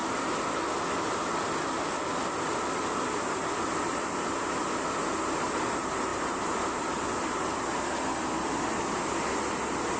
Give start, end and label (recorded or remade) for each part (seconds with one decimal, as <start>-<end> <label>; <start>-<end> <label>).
0.0-10.0 recorded